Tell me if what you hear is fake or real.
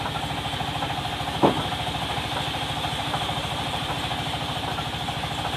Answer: real